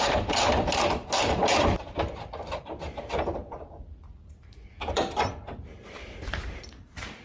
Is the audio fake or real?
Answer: fake